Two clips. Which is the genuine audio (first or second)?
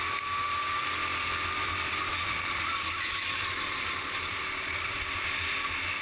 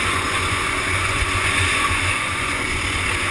first